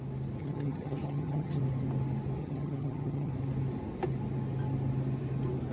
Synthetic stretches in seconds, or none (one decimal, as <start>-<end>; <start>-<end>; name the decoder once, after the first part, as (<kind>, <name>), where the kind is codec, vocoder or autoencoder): 0.4-1.6 (vocoder, HiFi-GAN); 2.4-3.3